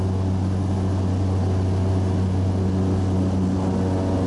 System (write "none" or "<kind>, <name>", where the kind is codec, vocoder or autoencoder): none